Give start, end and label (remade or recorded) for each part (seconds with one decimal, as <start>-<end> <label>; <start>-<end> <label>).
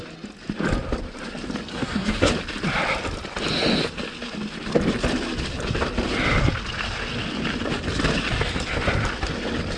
0.0-1.7 recorded; 1.7-2.3 remade; 2.3-9.8 recorded